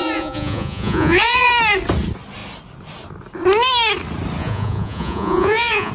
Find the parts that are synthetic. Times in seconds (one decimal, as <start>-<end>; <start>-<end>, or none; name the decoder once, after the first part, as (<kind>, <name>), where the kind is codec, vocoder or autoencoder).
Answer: 0.0-1.5 (vocoder, Vocos); 4.4-5.9